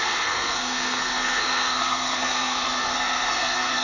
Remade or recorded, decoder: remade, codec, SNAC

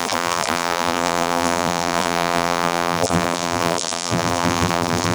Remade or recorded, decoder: remade, vocoder, BigVGAN v2